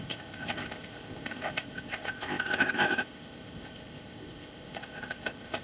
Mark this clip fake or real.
fake